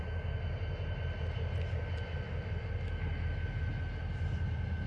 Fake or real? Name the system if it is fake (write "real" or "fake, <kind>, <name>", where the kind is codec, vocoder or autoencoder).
real